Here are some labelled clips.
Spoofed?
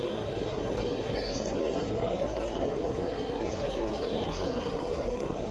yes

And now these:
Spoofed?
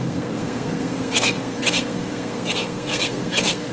yes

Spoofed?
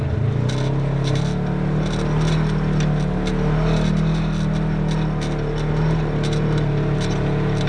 no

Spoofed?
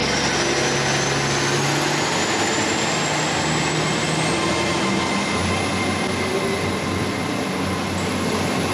no